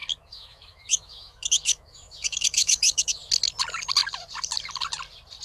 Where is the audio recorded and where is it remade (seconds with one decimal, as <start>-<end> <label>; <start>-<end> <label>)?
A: 0.0-3.2 remade; 3.2-5.4 recorded